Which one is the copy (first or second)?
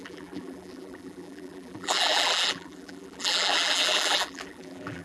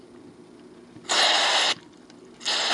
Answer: first